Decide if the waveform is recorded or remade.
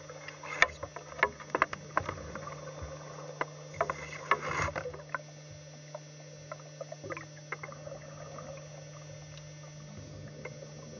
recorded